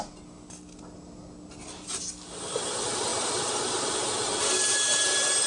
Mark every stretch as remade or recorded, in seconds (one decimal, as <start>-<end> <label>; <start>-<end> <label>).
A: 0.0-5.5 recorded